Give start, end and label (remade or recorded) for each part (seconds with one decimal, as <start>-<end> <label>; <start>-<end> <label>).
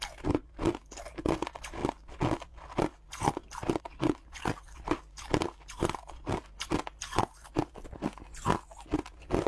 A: 0.0-9.5 recorded